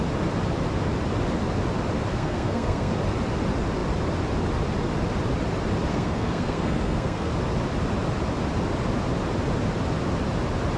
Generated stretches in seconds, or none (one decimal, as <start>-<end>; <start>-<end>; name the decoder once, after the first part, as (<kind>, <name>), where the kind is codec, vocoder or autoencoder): 2.1-2.9 (codec, SNAC); 5.9-7.3